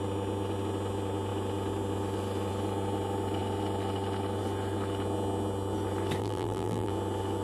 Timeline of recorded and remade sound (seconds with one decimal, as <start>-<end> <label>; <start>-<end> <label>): 0.0-6.2 recorded; 6.2-6.9 remade; 6.9-7.4 recorded